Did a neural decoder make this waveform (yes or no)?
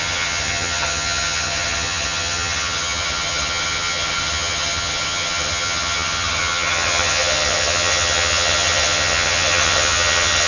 yes